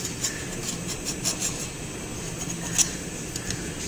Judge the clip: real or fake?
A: real